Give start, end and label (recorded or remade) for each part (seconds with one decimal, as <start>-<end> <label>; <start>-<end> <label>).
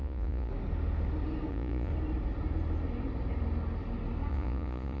0.0-0.5 remade; 0.5-1.5 recorded; 1.5-1.9 remade; 1.9-4.3 recorded; 4.3-5.0 remade